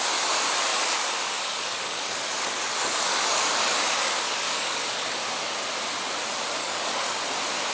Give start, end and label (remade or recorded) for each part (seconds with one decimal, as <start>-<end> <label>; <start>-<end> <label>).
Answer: 0.0-0.7 recorded; 0.7-5.2 remade; 5.2-6.6 recorded; 6.6-7.2 remade; 7.2-7.7 recorded